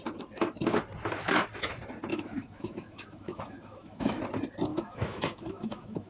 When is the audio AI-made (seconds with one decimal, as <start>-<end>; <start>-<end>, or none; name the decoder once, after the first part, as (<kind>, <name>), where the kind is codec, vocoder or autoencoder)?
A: 2.1-4.2 (autoencoder, DAC-VAE); 4.7-6.1

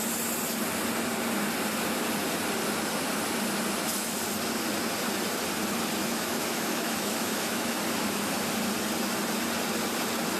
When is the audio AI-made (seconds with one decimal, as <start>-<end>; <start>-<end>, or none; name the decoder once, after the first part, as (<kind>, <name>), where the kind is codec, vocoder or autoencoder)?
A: 6.0-7.8 (autoencoder, DAC-VAE)

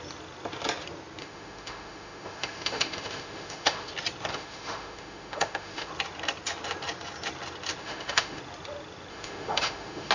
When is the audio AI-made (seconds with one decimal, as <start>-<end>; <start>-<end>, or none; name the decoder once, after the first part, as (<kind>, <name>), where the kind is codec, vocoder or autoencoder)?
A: 1.2-3.9 (autoencoder, DAC-VAE); 4.3-5.9; 7.8-8.4; 9.1-10.1

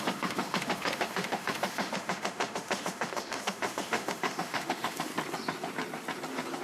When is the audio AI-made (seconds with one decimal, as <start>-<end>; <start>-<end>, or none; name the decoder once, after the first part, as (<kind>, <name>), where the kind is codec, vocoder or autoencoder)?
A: 0.0-5.1 (autoencoder, DAC-VAE)